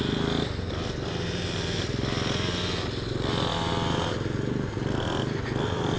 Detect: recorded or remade recorded